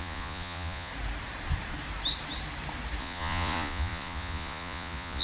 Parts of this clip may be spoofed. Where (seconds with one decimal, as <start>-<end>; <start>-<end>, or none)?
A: 0.0-0.9; 3.0-5.2